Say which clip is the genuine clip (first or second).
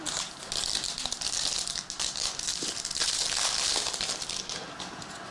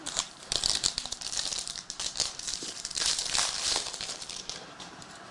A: first